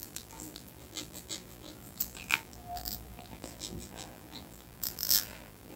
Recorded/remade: remade